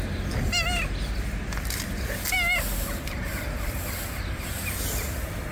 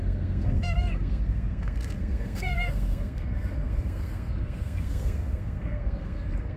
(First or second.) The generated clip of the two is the second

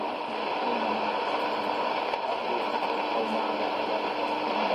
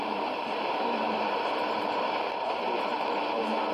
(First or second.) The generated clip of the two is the second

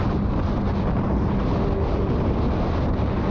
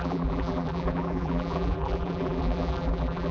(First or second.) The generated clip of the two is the second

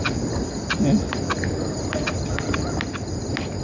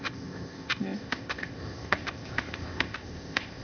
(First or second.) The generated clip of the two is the second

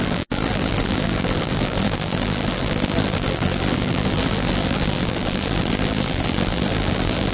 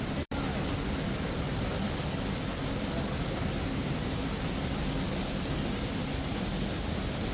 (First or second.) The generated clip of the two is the first